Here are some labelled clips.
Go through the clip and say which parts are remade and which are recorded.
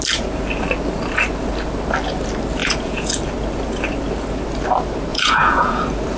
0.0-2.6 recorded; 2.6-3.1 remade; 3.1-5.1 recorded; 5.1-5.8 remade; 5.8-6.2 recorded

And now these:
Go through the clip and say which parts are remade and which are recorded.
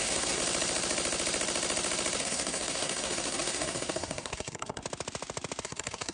0.0-0.4 remade; 0.4-2.2 recorded; 2.2-4.8 remade; 4.8-5.6 recorded; 5.6-6.1 remade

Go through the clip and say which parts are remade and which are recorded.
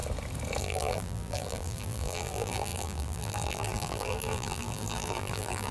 0.0-0.6 recorded; 0.6-5.7 remade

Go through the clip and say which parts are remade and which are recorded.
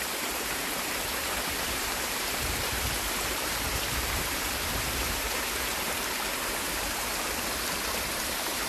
0.0-7.1 remade; 7.1-8.0 recorded; 8.0-8.7 remade